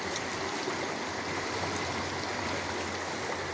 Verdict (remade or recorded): recorded